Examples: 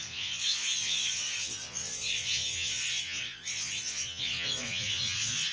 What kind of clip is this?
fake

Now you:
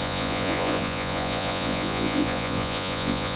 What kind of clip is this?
fake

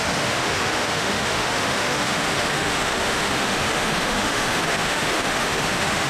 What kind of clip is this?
fake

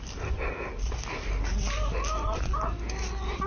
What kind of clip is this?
real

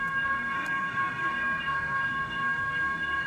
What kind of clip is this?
fake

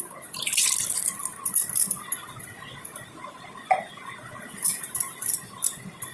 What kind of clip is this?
real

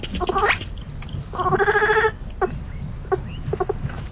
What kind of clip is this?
real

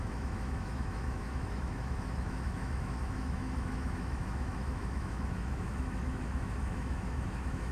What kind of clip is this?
fake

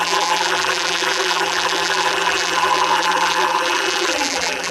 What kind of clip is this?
fake